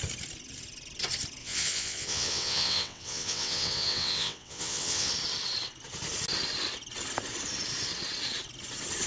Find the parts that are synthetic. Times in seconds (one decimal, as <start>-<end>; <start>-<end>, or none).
1.4-5.1